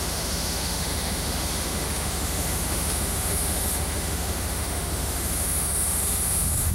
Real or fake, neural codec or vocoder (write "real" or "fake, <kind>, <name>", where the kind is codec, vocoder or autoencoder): fake, autoencoder, DAC-VAE